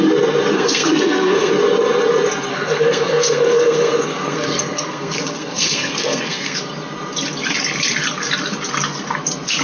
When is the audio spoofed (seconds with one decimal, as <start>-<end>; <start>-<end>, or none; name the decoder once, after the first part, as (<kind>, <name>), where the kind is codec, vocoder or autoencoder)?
0.5-1.5 (codec, SNAC); 2.5-6.6